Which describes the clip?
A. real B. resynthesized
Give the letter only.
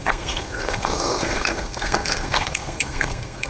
B